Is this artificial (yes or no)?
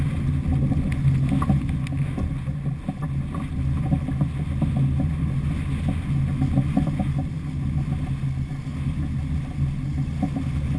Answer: no